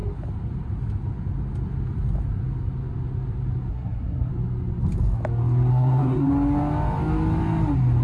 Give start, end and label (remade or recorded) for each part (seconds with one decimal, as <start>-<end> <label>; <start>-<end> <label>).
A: 0.0-3.7 recorded; 3.7-4.3 remade; 4.3-5.7 recorded; 5.7-6.3 remade; 6.3-8.0 recorded